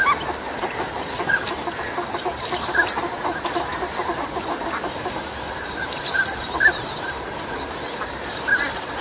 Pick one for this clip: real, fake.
fake